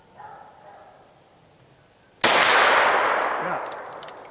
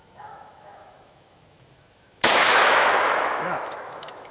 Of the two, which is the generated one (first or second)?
second